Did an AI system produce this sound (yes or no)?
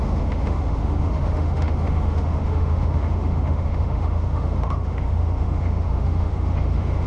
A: yes